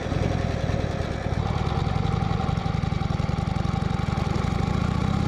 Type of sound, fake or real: real